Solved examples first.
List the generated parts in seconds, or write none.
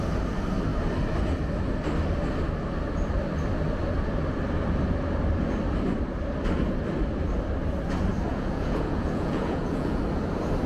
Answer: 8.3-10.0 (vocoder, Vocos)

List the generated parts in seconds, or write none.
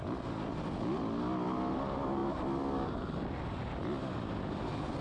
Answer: none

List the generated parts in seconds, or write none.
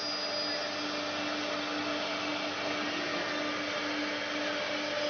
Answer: none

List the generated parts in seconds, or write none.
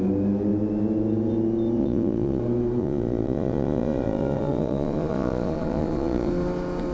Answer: 1.8-2.4 (vocoder, Vocos); 2.8-6.3